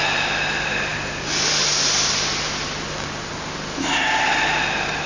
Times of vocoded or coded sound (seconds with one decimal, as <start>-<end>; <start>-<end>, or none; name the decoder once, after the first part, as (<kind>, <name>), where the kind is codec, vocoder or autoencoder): none